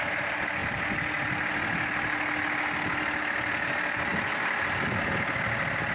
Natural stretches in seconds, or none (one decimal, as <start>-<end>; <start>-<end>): 0.0-5.9